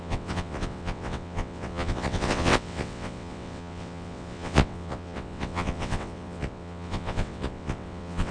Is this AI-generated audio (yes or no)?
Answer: yes